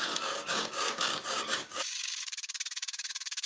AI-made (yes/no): yes